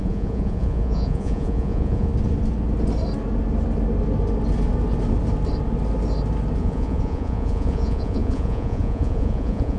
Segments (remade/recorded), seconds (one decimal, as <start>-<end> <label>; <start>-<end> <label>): 0.0-2.1 remade; 2.1-6.6 recorded; 6.6-9.8 remade